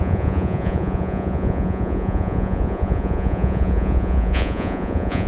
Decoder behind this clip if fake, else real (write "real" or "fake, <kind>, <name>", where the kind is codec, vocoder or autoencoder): fake, vocoder, Vocos